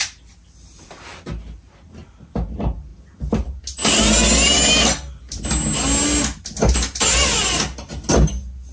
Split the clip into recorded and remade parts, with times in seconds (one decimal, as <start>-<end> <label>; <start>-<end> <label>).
0.0-8.7 recorded